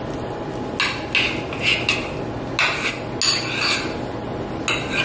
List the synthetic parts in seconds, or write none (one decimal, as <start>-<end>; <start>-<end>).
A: none